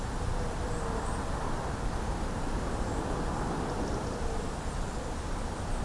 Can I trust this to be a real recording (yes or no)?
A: no